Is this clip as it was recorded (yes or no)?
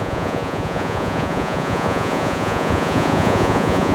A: no